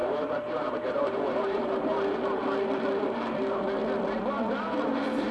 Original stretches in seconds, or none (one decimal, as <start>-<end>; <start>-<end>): 2.4-3.0; 3.8-4.6